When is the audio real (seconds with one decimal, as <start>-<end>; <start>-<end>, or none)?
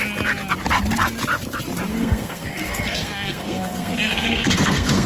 0.0-1.9